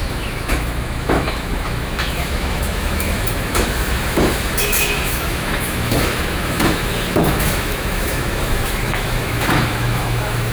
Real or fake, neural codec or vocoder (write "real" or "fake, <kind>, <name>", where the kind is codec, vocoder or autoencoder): fake, autoencoder, DAC-VAE